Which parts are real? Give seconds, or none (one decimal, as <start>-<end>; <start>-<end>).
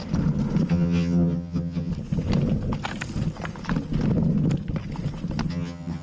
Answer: 0.0-0.7; 1.9-5.5